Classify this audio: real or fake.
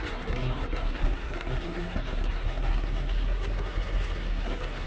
fake